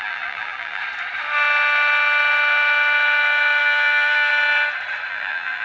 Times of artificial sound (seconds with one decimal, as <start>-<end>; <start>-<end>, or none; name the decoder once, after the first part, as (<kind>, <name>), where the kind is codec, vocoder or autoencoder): 0.0-0.8 (vocoder, BigVGAN v2); 3.6-4.3; 5.1-5.6